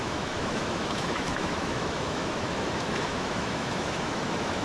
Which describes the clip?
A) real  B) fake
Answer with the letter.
B